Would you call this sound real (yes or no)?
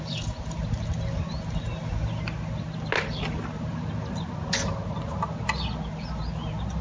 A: yes